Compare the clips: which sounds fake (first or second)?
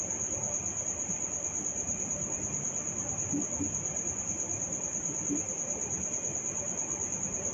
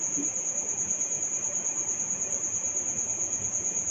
second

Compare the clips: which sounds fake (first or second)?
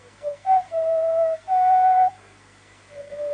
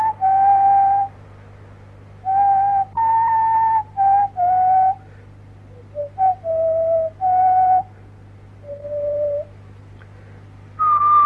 first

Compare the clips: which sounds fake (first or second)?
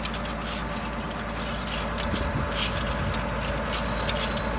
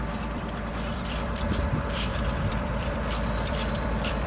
second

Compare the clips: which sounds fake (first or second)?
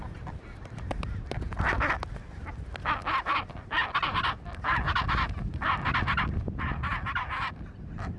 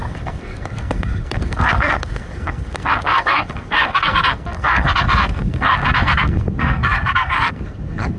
second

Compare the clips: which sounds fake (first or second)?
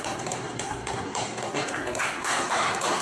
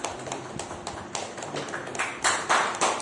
first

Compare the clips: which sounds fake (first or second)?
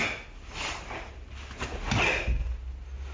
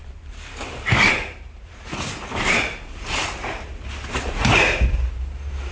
second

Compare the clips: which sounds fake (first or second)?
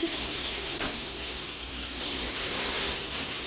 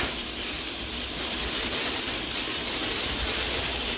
first